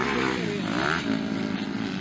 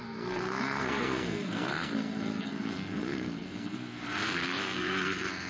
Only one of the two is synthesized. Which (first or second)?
second